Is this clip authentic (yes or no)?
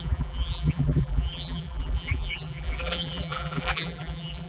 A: no